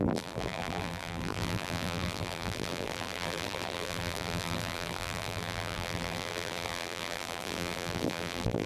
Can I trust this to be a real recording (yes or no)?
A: no